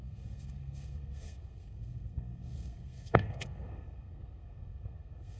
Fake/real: fake